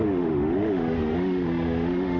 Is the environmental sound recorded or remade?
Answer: remade